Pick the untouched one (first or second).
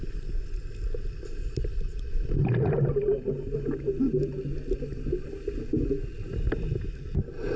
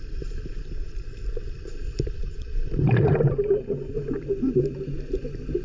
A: first